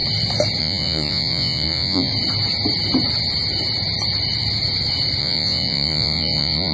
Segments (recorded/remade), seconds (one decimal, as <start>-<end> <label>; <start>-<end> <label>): 0.0-0.6 recorded; 0.6-2.1 remade; 2.1-5.2 recorded; 5.2-6.7 remade